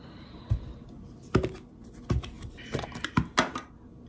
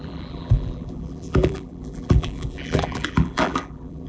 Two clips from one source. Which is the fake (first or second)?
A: second